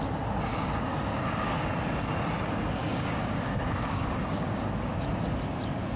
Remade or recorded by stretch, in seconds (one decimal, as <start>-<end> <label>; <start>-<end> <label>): 0.0-0.5 recorded; 0.5-1.7 remade; 1.7-2.8 recorded; 2.8-4.9 remade; 4.9-6.0 recorded